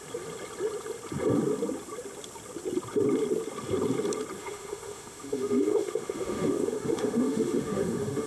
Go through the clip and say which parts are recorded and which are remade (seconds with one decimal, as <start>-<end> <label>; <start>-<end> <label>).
0.0-4.4 recorded; 4.4-8.3 remade